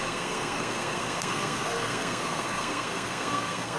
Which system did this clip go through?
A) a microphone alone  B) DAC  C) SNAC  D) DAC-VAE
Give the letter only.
C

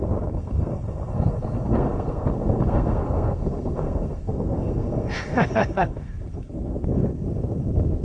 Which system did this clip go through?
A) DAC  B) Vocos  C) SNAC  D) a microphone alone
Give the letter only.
C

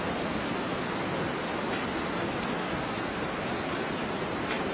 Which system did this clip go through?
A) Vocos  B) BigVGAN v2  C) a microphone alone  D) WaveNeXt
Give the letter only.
C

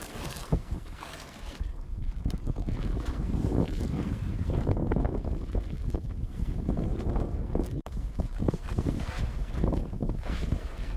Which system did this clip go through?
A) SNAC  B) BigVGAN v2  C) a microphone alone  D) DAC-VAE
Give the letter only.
A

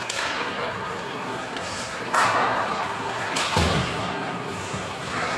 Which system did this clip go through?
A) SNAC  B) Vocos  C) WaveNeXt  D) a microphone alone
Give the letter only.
A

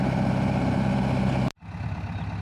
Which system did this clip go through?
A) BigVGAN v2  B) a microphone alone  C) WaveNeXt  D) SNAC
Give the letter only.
B